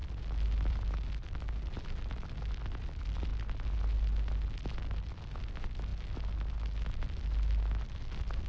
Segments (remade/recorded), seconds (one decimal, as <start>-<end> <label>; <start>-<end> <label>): 0.0-0.7 recorded; 0.7-3.3 remade; 3.3-5.4 recorded; 5.4-5.9 remade; 5.9-8.5 recorded